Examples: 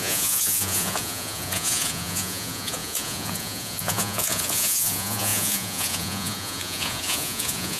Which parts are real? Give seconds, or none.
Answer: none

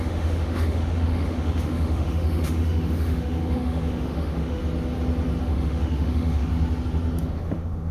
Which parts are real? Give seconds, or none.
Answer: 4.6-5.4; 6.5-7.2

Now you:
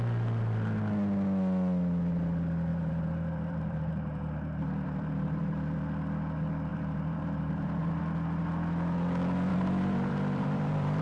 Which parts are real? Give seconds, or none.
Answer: 0.0-2.7; 5.8-6.7; 8.0-9.5

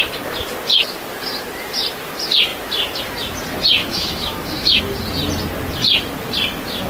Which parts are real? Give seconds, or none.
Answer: 0.0-3.8; 4.8-6.9